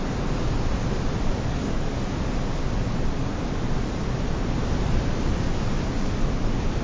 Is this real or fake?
real